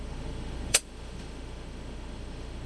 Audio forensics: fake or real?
fake